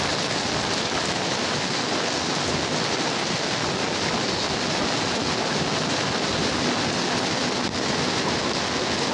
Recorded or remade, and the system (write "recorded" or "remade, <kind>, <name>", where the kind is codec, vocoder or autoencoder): recorded